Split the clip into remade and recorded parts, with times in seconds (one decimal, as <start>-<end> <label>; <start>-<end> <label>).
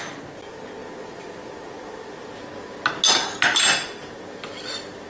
0.0-5.1 recorded